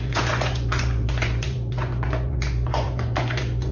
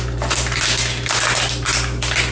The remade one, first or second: first